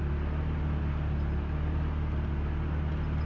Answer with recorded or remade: recorded